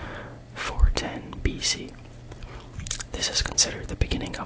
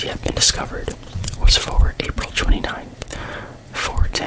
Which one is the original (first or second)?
first